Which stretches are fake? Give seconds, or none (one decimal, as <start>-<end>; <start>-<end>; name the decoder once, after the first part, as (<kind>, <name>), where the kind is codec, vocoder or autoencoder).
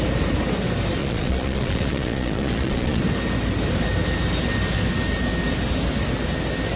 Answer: 1.0-3.0 (vocoder, Vocos)